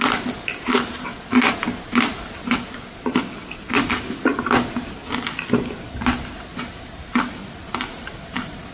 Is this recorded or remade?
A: recorded